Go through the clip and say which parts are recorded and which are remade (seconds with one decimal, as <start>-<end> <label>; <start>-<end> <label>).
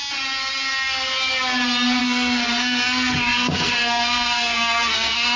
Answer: 0.0-2.0 recorded; 2.0-5.4 remade